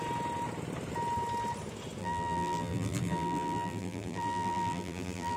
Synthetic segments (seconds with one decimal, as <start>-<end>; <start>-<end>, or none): 2.0-5.4